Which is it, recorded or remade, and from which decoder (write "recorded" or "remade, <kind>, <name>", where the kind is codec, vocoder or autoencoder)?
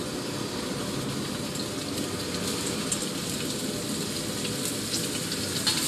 recorded